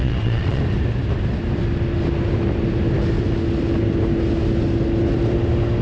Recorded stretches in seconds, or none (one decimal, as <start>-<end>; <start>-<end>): 0.6-5.8